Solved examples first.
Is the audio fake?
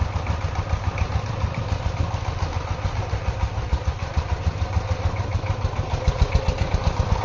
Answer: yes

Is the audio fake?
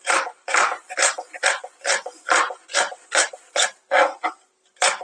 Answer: no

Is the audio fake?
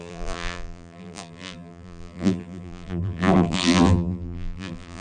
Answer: yes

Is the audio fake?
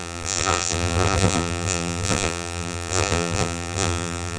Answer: yes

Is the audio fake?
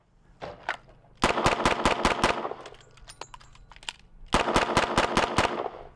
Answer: no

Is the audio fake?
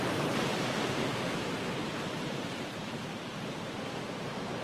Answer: yes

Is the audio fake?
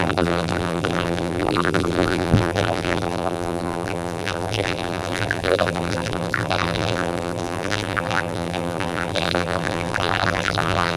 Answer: yes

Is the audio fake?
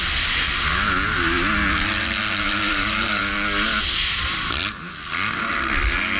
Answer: no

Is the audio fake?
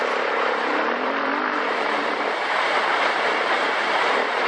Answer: yes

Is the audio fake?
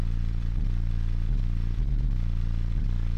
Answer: yes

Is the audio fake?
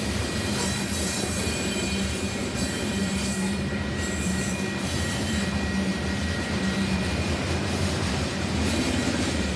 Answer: yes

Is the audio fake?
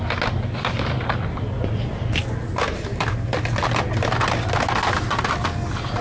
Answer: no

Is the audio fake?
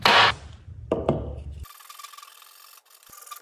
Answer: no